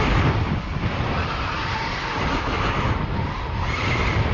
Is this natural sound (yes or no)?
yes